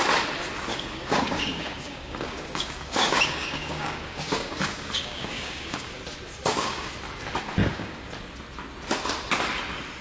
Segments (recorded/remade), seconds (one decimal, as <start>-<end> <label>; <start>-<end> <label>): 0.0-0.7 recorded; 0.7-5.9 remade; 5.9-6.4 recorded; 6.4-6.9 remade; 6.9-7.6 recorded; 7.6-8.1 remade; 8.1-10.0 recorded